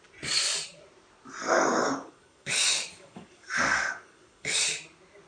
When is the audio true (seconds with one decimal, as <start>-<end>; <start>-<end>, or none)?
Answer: 0.0-1.4; 4.6-5.3